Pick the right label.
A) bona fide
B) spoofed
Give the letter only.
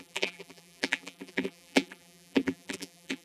B